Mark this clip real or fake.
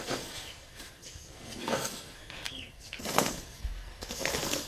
fake